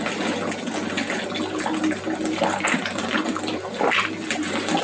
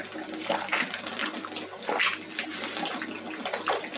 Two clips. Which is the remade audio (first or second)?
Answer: first